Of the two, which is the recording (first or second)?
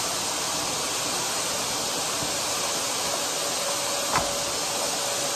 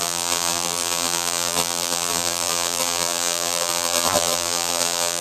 first